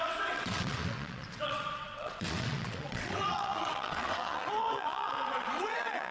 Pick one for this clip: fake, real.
fake